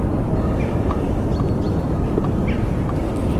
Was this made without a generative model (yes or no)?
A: yes